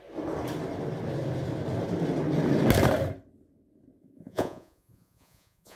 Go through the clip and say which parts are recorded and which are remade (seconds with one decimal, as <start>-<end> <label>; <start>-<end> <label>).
0.0-4.0 recorded; 4.0-5.8 remade